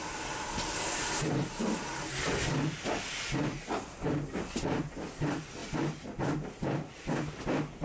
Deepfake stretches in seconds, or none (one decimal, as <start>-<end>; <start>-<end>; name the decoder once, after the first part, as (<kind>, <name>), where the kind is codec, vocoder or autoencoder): none